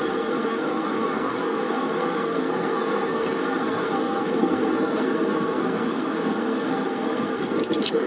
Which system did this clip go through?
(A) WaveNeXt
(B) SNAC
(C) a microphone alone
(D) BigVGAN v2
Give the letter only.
B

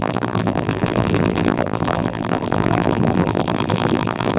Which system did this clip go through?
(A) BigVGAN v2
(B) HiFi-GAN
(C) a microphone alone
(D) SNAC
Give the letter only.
A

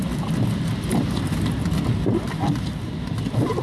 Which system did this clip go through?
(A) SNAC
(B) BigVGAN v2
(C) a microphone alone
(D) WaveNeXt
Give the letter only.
C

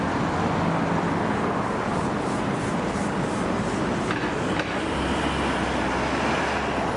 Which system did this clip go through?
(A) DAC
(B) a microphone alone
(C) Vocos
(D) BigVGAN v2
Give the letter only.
B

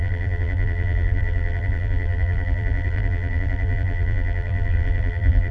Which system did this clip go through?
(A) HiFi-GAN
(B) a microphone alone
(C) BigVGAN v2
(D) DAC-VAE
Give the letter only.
C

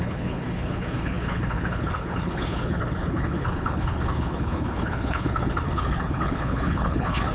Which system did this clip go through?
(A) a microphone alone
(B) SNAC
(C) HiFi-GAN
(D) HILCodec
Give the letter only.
D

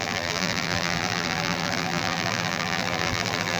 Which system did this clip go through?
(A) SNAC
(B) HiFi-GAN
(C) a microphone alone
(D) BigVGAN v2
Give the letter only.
D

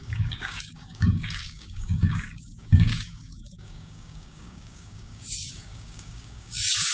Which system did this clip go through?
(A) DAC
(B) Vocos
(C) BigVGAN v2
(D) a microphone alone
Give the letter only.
A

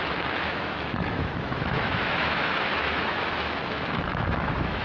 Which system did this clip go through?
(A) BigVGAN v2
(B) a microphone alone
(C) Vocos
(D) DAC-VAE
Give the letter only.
D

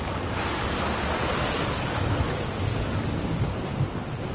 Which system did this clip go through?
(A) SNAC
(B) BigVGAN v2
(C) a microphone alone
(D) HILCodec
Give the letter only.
C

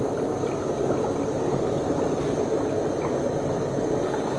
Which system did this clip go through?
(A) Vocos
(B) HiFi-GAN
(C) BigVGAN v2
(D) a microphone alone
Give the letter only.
D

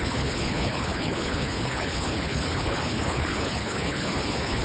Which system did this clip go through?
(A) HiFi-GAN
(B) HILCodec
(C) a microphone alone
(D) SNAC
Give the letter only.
B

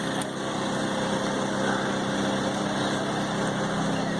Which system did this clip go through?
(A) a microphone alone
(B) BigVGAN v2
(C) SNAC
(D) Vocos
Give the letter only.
A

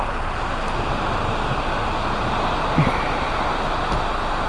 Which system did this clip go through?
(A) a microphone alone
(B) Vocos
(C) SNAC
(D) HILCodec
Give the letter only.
A